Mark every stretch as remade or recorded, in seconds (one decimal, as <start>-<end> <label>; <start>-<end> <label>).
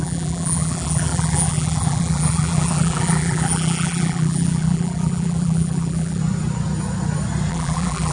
0.0-6.2 remade; 6.2-7.5 recorded; 7.5-8.1 remade